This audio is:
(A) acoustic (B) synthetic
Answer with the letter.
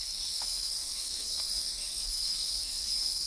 B